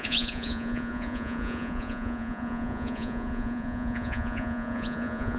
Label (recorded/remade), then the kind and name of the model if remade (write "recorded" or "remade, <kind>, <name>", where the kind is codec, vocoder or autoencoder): remade, vocoder, Vocos